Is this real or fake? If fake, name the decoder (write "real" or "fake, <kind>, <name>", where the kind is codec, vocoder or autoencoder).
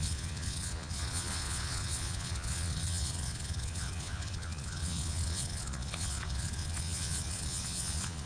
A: fake, vocoder, Vocos